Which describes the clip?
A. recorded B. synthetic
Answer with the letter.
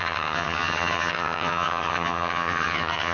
B